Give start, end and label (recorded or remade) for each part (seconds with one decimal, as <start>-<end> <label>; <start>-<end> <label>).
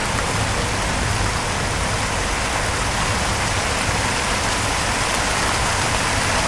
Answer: 0.0-6.5 recorded